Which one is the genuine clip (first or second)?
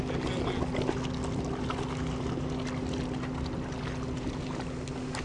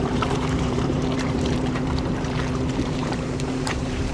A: first